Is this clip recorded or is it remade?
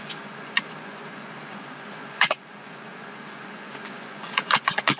remade